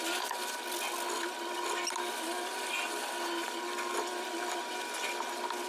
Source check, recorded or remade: recorded